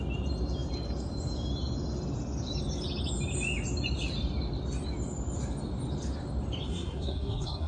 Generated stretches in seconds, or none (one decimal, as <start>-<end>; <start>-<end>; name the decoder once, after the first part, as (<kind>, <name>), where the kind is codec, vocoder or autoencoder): 6.7-7.7 (codec, SNAC)